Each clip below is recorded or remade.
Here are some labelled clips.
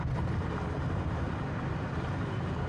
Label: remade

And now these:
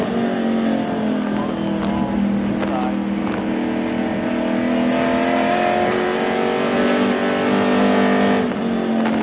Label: recorded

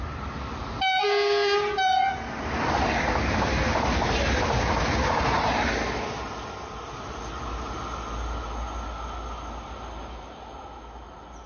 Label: recorded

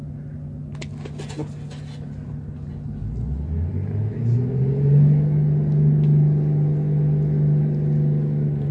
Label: recorded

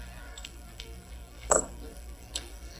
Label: remade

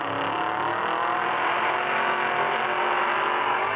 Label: recorded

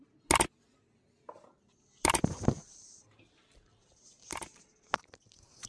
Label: recorded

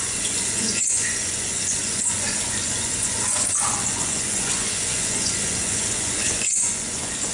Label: remade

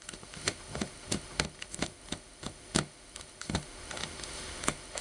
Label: remade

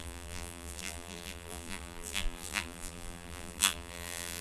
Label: remade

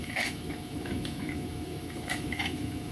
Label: remade